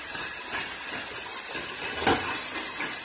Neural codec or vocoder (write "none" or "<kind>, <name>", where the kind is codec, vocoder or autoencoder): none